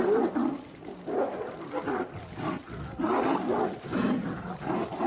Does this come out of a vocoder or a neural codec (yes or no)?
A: no